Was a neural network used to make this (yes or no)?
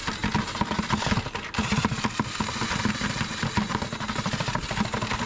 no